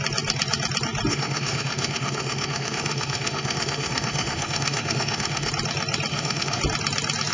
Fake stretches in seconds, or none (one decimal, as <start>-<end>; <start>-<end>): 1.1-5.5; 6.1-6.6